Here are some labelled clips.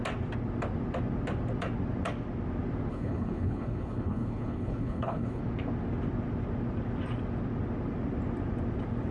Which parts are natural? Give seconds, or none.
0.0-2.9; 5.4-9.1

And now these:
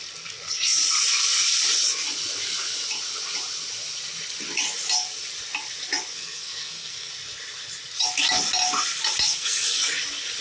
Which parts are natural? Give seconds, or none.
0.0-6.1; 7.1-9.3; 9.8-10.4

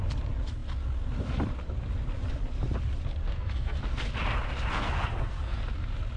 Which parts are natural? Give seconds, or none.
0.0-3.2; 3.8-4.7; 5.6-6.2

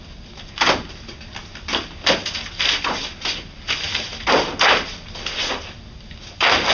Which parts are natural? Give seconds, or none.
0.0-6.7

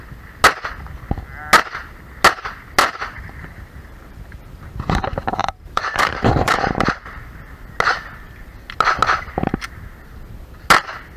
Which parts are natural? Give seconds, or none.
0.0-2.8; 7.2-11.2

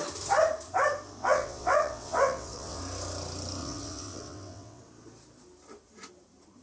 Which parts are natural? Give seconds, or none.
0.0-1.2; 2.8-3.6; 4.8-6.6